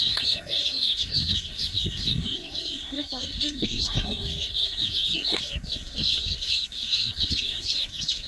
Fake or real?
fake